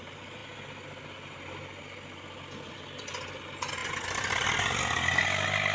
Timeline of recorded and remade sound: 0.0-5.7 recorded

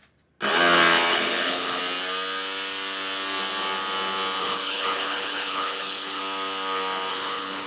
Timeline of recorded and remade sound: 0.0-1.1 recorded; 1.1-1.8 remade; 1.8-4.4 recorded; 4.4-6.2 remade; 6.2-7.1 recorded; 7.1-7.7 remade

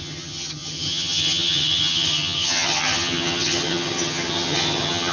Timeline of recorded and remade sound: 0.0-5.1 remade

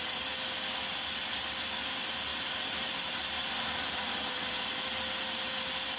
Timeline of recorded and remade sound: 0.0-6.0 recorded

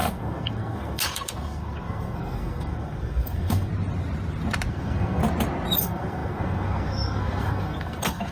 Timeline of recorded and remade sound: 0.0-3.7 remade; 3.7-4.7 recorded; 4.7-5.2 remade; 5.2-5.8 recorded; 5.8-8.3 remade

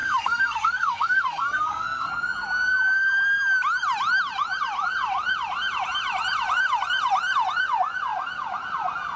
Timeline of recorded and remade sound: 0.0-2.1 remade; 2.1-9.2 recorded

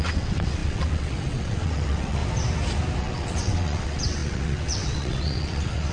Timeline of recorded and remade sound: 0.0-2.2 remade; 2.2-3.0 recorded; 3.0-5.9 remade

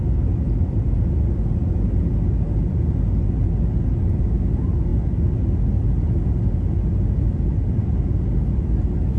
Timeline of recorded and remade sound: 0.0-9.2 recorded